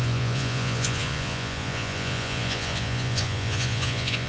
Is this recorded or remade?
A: remade